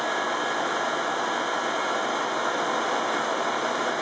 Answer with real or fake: real